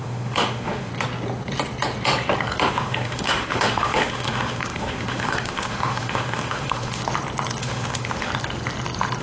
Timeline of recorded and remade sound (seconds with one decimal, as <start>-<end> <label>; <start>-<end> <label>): 0.0-0.9 remade; 0.9-2.7 recorded; 2.7-7.0 remade; 7.0-7.6 recorded; 7.6-8.3 remade; 8.3-9.2 recorded